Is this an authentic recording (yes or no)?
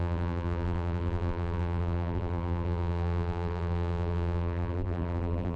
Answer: no